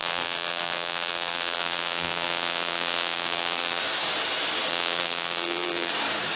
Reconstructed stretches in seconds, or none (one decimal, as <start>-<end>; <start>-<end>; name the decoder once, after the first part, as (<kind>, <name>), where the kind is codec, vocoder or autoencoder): 0.0-3.8 (vocoder, BigVGAN v2); 4.7-5.9